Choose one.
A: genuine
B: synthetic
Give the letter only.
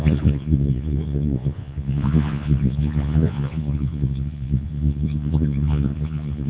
B